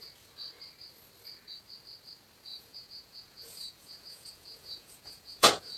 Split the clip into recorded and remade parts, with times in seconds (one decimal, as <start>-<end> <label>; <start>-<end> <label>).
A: 0.0-2.5 recorded; 2.5-5.8 remade